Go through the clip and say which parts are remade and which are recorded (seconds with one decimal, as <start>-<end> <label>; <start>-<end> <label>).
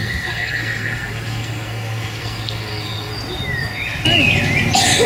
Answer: 0.0-3.1 remade; 3.1-5.1 recorded